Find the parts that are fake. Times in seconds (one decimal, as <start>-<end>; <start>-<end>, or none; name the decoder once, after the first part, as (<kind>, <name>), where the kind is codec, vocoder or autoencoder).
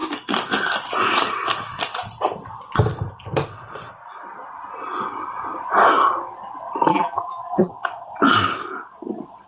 6.9-7.7 (vocoder, BigVGAN v2)